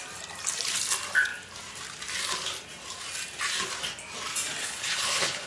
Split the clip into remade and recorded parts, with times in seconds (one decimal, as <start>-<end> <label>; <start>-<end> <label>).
0.0-4.6 recorded; 4.6-5.5 remade